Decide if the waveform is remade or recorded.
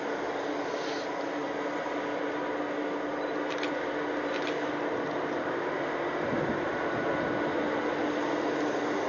recorded